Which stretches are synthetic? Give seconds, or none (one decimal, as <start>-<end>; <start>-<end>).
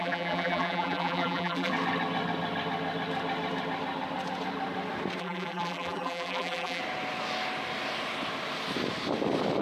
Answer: 0.0-1.7; 5.2-6.8